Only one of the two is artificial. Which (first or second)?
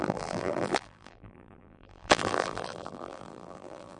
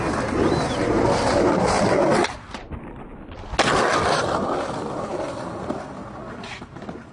first